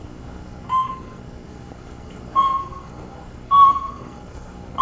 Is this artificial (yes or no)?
yes